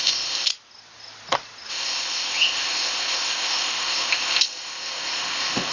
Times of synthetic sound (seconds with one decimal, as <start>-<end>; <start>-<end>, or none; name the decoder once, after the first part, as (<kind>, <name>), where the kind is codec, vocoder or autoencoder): 0.0-0.5 (codec, ZipCodec); 1.7-5.7